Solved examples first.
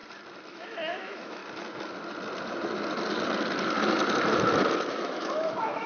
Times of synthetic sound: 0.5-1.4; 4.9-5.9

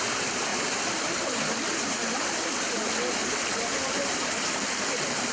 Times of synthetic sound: none

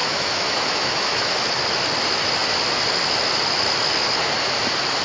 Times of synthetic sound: 0.0-1.3

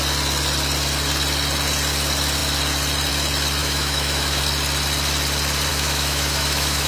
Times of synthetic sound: 3.6-4.4; 5.7-6.9

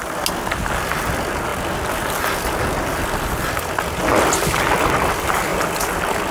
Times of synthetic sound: none

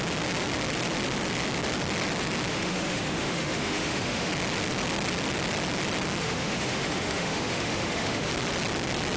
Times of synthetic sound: 2.5-4.3; 6.2-8.3

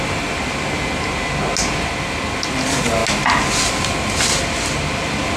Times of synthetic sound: none

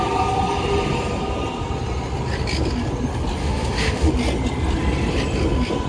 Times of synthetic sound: 3.4-4.1